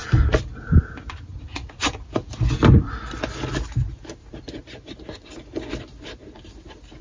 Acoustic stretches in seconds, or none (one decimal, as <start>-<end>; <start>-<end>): 0.0-1.3; 1.9-7.0